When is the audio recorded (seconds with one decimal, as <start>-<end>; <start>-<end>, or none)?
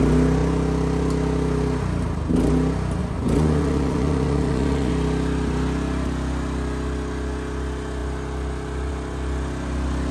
0.0-3.0; 4.9-10.1